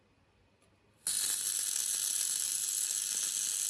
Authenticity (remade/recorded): recorded